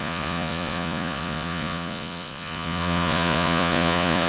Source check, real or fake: fake